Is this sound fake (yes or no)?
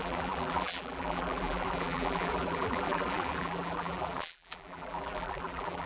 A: yes